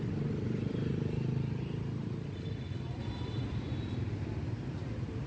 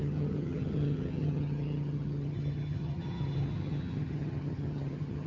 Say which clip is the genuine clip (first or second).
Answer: first